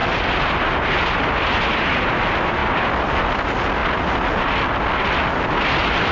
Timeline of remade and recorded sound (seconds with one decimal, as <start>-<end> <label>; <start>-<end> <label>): 0.0-6.1 recorded